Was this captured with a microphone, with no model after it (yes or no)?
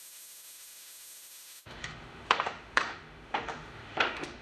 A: no